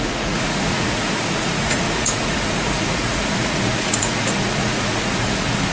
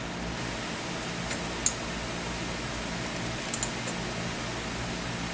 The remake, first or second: first